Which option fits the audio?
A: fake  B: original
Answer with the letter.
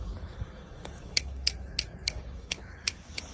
A